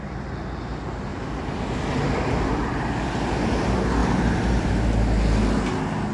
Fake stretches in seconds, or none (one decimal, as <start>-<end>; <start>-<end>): 1.1-2.7; 4.0-4.7